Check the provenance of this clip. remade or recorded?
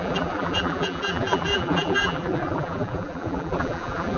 remade